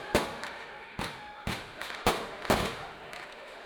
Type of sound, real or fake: fake